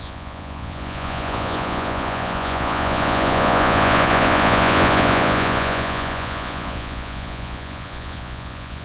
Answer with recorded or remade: remade